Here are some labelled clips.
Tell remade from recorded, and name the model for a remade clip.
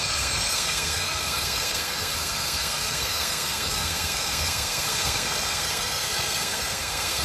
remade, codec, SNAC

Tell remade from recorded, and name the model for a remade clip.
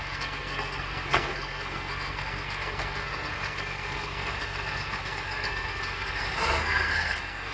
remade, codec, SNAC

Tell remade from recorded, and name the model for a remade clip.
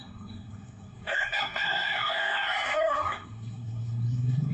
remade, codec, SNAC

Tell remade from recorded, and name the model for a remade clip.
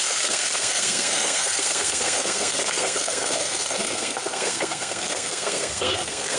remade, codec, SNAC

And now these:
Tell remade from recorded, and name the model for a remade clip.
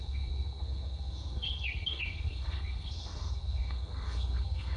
remade, codec, SNAC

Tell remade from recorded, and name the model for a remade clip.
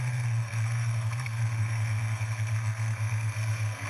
remade, codec, SNAC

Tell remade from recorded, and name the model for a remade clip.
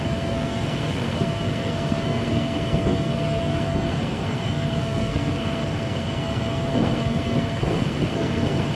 remade, codec, SNAC